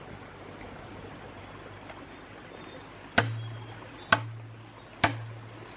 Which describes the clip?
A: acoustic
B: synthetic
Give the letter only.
A